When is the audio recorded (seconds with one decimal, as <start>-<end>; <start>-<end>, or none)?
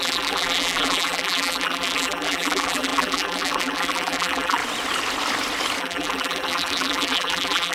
4.6-5.8